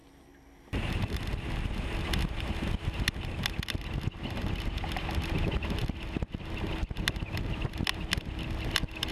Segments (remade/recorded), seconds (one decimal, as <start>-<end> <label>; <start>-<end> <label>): 0.0-9.1 recorded